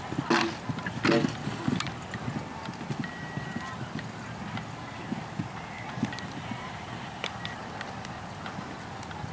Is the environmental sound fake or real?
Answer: real